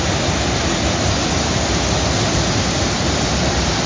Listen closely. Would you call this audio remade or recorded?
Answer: recorded